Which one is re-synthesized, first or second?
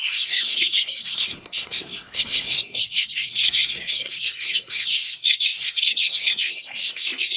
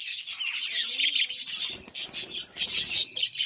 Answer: first